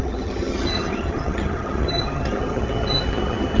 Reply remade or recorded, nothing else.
remade